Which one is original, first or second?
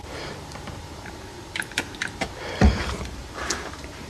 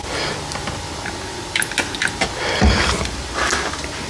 second